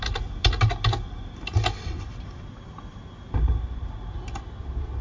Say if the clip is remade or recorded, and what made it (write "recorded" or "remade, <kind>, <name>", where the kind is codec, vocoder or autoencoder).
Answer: recorded